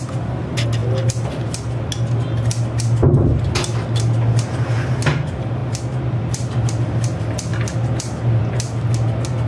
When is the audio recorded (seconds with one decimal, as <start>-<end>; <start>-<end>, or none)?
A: 0.0-9.5